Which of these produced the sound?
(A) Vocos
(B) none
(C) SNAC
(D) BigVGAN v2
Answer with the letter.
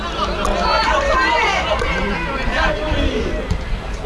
B